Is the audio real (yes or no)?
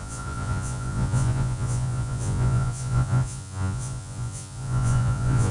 no